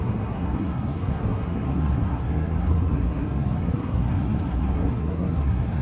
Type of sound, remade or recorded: remade